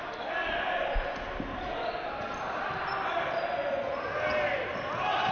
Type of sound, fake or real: real